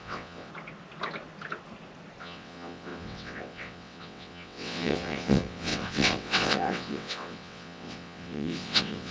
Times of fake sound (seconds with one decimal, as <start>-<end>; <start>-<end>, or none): 0.0-0.5; 2.2-9.1